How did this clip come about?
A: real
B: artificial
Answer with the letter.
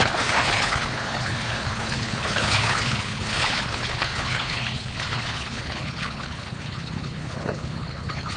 B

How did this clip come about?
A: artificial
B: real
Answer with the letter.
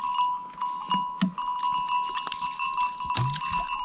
B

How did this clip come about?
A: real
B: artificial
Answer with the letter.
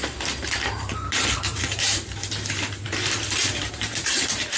B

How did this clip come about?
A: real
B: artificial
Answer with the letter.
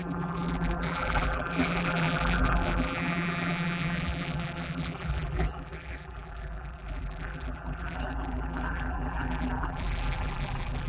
B